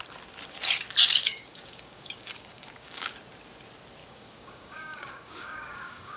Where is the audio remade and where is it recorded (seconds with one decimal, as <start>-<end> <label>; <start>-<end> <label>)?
0.0-1.2 recorded; 1.2-3.1 remade; 3.1-4.0 recorded; 4.0-6.2 remade